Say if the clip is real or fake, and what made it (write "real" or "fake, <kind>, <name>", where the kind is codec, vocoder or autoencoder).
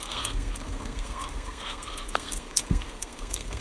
fake, codec, SNAC